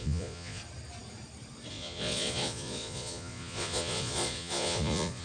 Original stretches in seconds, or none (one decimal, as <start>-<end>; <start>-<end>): 0.6-1.7